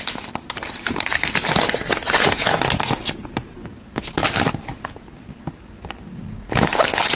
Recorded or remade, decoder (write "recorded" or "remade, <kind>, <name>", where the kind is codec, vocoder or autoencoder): recorded